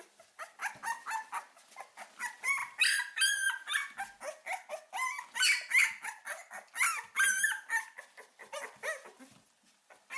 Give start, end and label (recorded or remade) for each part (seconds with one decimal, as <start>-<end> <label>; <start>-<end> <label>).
0.0-10.2 recorded